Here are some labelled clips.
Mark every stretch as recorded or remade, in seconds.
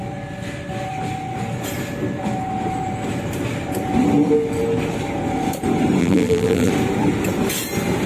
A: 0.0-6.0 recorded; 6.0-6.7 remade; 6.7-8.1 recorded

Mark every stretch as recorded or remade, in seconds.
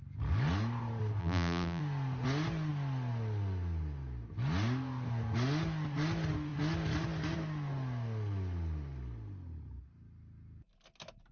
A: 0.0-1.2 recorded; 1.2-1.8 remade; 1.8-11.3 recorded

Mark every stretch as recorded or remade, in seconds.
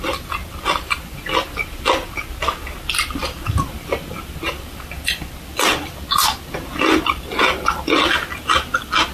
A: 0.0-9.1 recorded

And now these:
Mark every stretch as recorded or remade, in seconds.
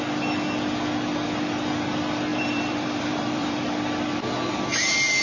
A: 0.0-2.3 recorded; 2.3-3.7 remade; 3.7-5.2 recorded